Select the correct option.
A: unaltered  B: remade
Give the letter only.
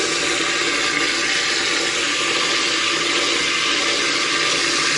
A